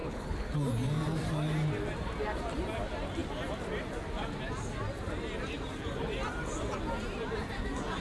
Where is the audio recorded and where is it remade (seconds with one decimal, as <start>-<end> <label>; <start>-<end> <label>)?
0.0-0.5 remade; 0.5-8.0 recorded